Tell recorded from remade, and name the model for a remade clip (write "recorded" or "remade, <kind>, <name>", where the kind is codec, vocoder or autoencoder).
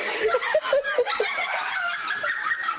recorded